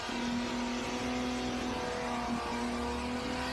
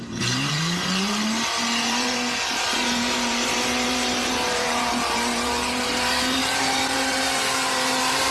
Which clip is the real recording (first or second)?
first